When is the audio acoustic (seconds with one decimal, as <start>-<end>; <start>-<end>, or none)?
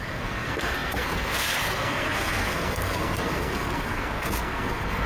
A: none